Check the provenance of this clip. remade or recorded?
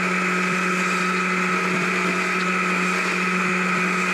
recorded